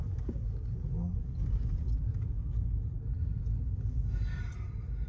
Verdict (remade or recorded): recorded